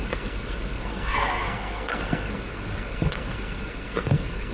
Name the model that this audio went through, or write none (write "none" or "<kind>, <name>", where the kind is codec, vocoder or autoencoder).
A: codec, SNAC